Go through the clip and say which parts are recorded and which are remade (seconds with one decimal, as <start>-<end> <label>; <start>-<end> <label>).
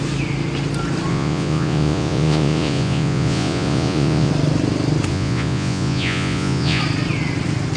0.0-1.1 recorded; 1.1-4.3 remade; 4.3-5.1 recorded; 5.1-6.8 remade; 6.8-7.8 recorded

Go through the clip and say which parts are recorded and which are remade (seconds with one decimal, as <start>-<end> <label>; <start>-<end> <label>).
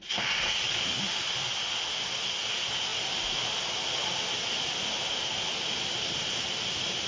0.0-7.1 recorded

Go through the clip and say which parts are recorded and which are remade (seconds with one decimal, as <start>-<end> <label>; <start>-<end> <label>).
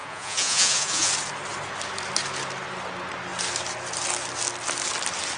0.0-1.1 remade; 1.1-5.4 recorded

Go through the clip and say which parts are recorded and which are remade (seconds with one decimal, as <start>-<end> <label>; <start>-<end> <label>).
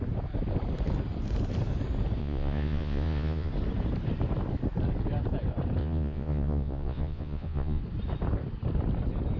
0.0-2.2 recorded; 2.2-3.5 remade; 3.5-5.8 recorded; 5.8-7.8 remade; 7.8-9.4 recorded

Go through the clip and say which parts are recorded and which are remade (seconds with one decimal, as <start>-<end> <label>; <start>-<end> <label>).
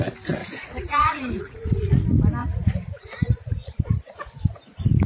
0.0-0.4 recorded; 0.4-1.9 remade; 1.9-2.4 recorded; 2.4-4.1 remade; 4.1-5.1 recorded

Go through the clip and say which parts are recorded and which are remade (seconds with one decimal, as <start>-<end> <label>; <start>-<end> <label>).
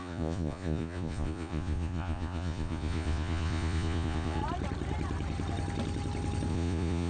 0.0-4.4 remade; 4.4-6.5 recorded; 6.5-7.1 remade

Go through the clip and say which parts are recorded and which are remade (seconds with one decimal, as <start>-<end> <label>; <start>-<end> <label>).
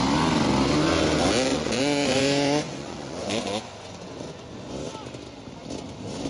0.0-1.5 recorded; 1.5-4.7 remade; 4.7-6.3 recorded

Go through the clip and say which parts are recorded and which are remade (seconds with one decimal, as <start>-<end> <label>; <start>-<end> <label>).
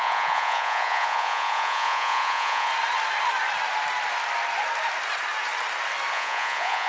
0.0-2.7 remade; 2.7-6.1 recorded; 6.1-6.9 remade